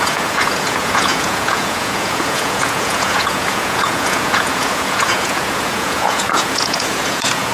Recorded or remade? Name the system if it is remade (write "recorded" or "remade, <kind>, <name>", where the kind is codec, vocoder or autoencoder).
remade, vocoder, Vocos